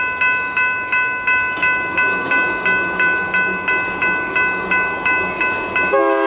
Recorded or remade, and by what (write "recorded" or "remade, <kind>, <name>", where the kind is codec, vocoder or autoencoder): recorded